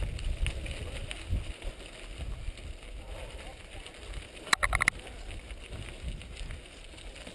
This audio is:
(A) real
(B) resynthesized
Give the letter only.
A